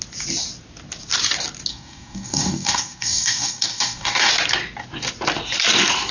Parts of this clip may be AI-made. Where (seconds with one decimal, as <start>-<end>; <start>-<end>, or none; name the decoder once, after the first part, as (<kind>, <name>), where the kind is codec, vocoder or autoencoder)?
1.7-4.3 (codec, DAC)